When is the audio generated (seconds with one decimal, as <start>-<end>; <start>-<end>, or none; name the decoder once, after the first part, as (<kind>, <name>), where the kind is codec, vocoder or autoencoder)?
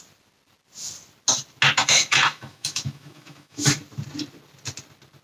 1.8-3.8 (autoencoder, DAC-VAE)